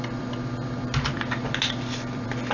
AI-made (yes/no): yes